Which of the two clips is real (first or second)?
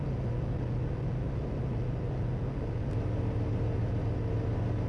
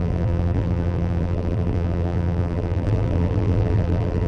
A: first